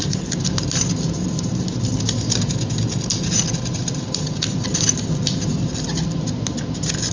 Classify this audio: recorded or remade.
recorded